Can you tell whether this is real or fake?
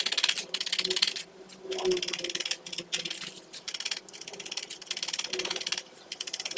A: real